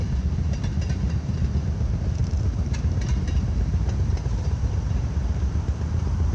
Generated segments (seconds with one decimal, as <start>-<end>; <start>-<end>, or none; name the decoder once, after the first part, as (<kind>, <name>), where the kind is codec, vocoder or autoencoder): 0.0-6.3 (vocoder, BigVGAN v2)